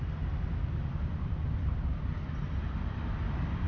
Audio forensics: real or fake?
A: real